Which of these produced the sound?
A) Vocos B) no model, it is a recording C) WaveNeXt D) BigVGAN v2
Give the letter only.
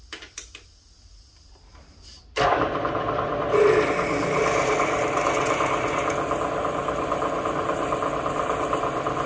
B